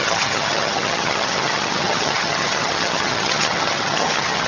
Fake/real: fake